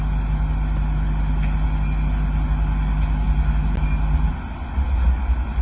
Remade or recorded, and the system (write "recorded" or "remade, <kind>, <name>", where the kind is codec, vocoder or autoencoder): recorded